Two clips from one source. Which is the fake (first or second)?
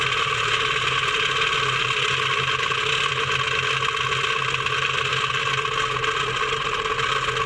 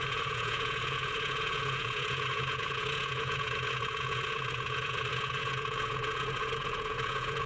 second